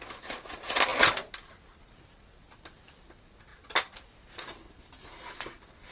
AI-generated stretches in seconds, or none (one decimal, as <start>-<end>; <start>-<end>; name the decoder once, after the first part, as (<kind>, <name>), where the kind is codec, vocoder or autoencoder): none